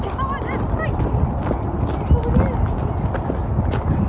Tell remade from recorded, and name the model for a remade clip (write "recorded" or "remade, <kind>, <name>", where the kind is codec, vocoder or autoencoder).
recorded